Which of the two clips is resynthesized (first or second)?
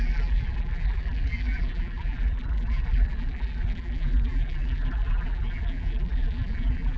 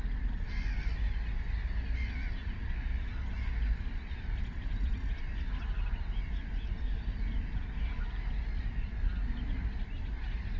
first